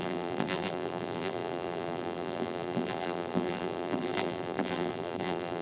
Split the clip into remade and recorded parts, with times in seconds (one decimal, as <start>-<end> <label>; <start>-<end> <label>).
0.0-5.6 remade

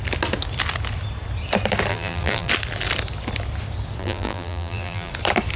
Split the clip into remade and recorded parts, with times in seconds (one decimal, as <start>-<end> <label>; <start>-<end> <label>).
0.0-1.9 recorded; 1.9-2.5 remade; 2.5-4.0 recorded; 4.0-5.1 remade; 5.1-5.6 recorded

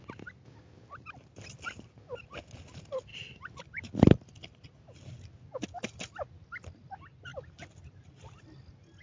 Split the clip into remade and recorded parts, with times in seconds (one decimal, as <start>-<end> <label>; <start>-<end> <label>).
0.0-3.1 recorded; 3.1-5.3 remade; 5.3-7.3 recorded; 7.3-8.4 remade; 8.4-9.0 recorded

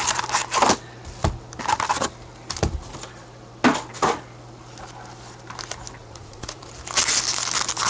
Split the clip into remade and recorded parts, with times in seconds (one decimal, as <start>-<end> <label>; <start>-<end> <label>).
0.0-6.0 recorded; 6.0-6.7 remade; 6.7-7.9 recorded